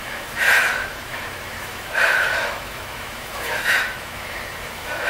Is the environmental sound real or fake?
fake